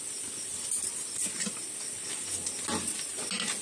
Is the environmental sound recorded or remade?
recorded